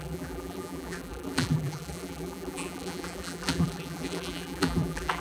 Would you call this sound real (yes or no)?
no